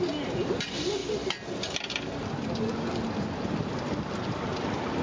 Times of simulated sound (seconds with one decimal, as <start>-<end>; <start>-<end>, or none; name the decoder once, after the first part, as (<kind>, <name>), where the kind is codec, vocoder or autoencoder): none